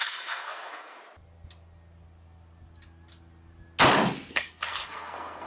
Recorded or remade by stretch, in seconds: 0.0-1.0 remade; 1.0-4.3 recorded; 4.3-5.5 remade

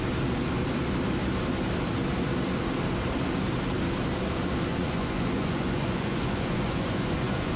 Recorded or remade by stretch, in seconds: 0.0-4.7 recorded; 4.7-7.6 remade

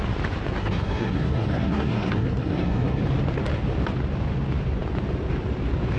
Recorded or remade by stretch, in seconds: 0.0-0.6 recorded; 0.6-3.0 remade; 3.0-6.0 recorded

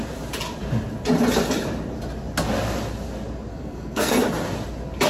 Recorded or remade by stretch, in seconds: 0.0-3.5 recorded; 3.5-4.2 remade; 4.2-5.1 recorded

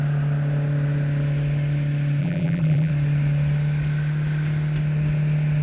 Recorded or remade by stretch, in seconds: 0.0-2.2 recorded; 2.2-2.9 remade; 2.9-5.6 recorded